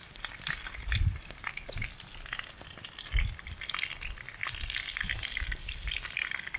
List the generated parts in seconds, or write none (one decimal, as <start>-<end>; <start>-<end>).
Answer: none

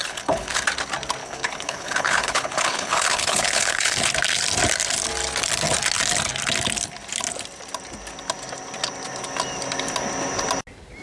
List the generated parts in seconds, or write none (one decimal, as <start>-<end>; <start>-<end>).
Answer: 0.0-0.6; 1.2-4.1

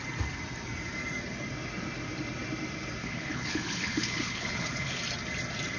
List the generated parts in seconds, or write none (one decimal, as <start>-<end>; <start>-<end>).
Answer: 3.0-5.0

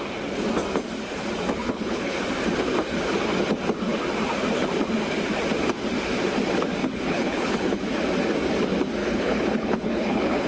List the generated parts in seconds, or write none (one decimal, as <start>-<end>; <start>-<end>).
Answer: 1.6-2.2; 6.8-7.8; 9.0-10.5

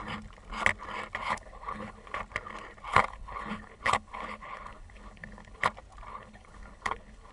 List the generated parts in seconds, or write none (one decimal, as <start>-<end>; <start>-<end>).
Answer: 1.2-2.2; 2.9-5.6; 6.1-7.3

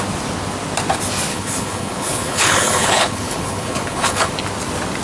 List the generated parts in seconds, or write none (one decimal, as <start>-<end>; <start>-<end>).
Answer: 1.3-4.3

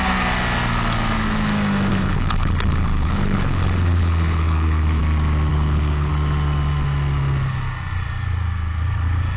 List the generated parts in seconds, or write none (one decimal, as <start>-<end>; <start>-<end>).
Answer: 1.9-5.0; 5.5-6.1

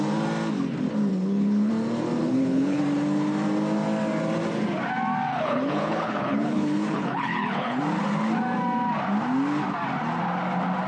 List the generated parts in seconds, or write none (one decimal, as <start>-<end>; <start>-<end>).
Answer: 1.1-1.7; 2.2-2.8; 5.3-7.8